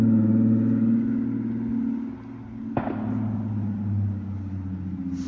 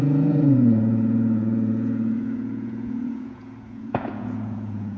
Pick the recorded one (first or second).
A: first